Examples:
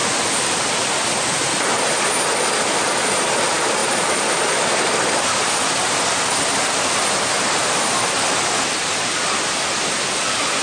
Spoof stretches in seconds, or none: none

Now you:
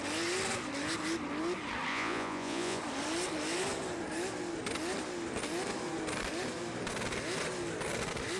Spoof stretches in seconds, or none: 1.9-2.8 (vocoder, Vocos)

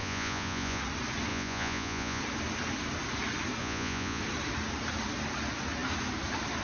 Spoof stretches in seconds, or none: 0.0-0.8 (vocoder, Vocos); 1.3-2.2; 3.6-4.2